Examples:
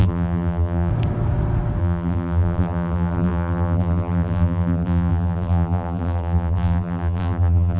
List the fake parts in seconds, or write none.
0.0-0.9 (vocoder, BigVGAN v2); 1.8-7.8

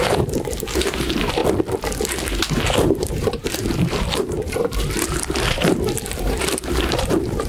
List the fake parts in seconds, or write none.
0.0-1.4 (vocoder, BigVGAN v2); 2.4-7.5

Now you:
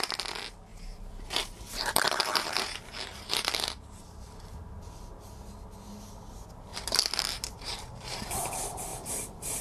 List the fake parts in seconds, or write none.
0.7-5.5 (vocoder, BigVGAN v2); 6.7-8.5; 8.9-9.6